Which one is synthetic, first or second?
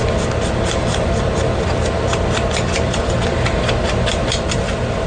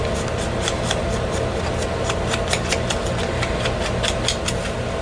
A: first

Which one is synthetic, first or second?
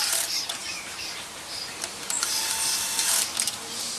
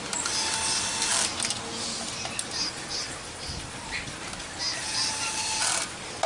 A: first